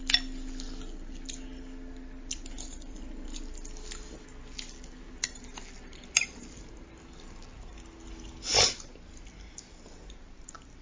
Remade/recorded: recorded